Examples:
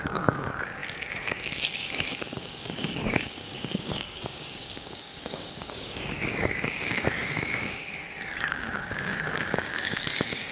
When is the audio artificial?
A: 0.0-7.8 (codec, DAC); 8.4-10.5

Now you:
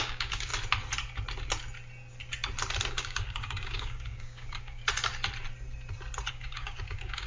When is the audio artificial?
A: 0.0-0.5 (codec, DAC); 2.9-4.8; 6.3-7.3

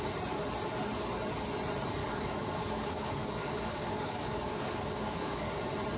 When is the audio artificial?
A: 2.0-5.6 (codec, DAC)

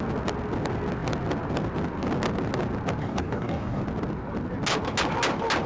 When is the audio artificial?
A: 3.0-3.8 (codec, DAC)